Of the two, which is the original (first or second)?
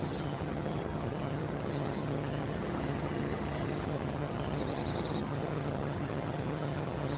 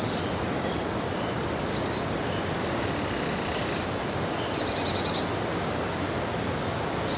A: second